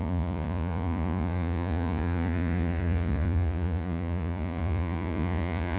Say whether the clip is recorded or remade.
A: remade